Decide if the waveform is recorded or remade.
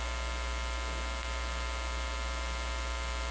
recorded